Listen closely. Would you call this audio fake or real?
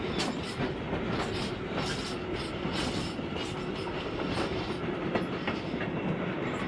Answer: real